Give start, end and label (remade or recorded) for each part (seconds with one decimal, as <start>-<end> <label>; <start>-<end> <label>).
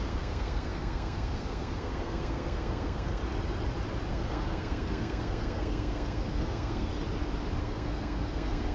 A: 0.0-3.2 remade; 3.2-4.1 recorded; 4.1-6.9 remade; 6.9-7.6 recorded; 7.6-8.7 remade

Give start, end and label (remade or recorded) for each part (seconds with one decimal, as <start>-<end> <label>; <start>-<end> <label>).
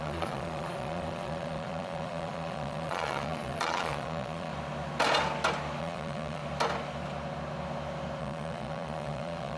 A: 0.0-4.5 remade; 4.5-5.8 recorded; 5.8-6.4 remade; 6.4-8.2 recorded; 8.2-9.6 remade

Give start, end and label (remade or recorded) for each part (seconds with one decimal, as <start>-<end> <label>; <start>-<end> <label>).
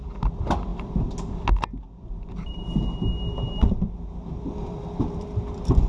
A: 0.0-5.9 recorded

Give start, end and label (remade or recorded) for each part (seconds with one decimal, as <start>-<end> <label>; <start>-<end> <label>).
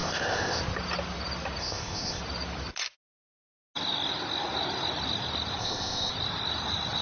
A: 0.0-0.6 remade; 0.6-1.6 recorded; 1.6-2.2 remade; 2.2-5.6 recorded; 5.6-6.1 remade; 6.1-7.0 recorded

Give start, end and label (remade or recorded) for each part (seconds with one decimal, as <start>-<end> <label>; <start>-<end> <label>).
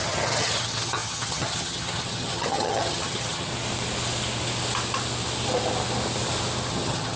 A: 0.0-3.5 remade; 3.5-6.7 recorded; 6.7-7.2 remade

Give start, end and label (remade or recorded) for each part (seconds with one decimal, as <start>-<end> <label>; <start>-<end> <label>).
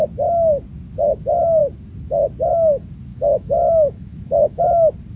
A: 0.0-3.1 recorded; 3.1-4.6 remade; 4.6-5.2 recorded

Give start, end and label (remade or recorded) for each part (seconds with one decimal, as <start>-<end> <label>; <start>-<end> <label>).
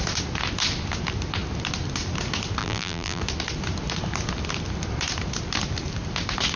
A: 0.0-2.6 recorded; 2.6-3.2 remade; 3.2-6.6 recorded